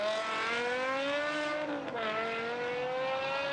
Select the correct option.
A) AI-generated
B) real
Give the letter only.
B